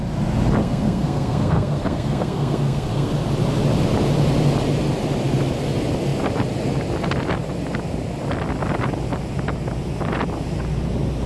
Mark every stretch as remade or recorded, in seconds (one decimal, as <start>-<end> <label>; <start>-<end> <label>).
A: 0.0-0.6 recorded; 0.6-3.1 remade; 3.1-11.3 recorded